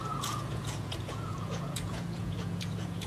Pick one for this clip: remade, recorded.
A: remade